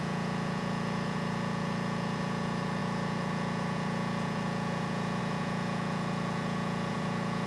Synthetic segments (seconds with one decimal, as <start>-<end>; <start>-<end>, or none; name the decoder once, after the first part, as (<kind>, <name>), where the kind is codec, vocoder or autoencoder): 0.0-7.5 (vocoder, Vocos)